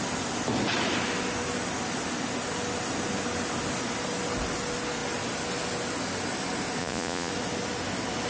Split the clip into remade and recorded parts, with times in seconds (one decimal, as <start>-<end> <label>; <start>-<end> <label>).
0.0-6.8 recorded; 6.8-7.3 remade; 7.3-8.3 recorded